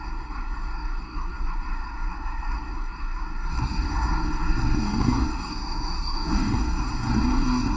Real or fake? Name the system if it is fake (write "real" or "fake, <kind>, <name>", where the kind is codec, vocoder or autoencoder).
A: fake, codec, SNAC